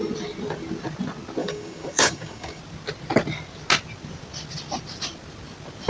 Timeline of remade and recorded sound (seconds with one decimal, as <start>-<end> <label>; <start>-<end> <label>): 0.0-1.4 recorded; 1.4-2.6 remade; 2.6-5.9 recorded